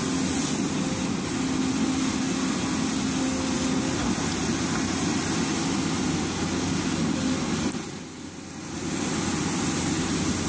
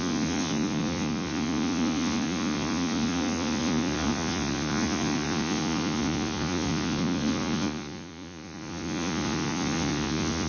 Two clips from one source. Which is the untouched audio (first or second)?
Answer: first